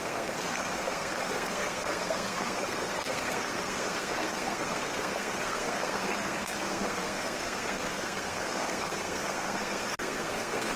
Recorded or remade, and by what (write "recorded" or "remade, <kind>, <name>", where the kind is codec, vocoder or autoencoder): remade, codec, SNAC